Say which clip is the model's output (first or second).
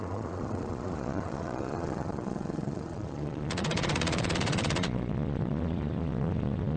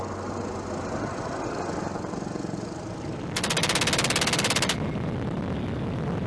first